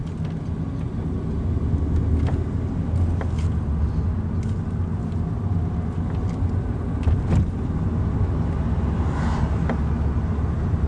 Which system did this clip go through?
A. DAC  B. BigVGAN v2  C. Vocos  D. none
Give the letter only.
D